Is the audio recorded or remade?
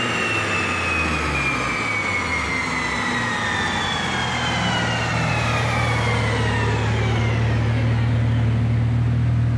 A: recorded